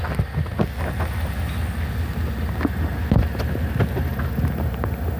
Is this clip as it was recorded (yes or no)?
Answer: yes